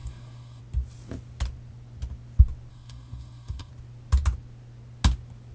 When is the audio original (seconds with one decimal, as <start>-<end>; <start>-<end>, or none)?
0.6-2.7; 3.7-5.5